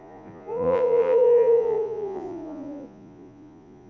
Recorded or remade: remade